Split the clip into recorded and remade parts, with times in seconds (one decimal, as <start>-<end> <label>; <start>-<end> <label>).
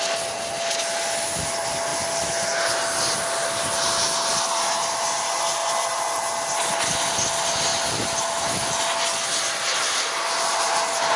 0.0-11.2 recorded